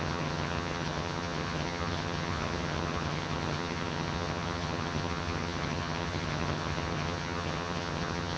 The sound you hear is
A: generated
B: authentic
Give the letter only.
A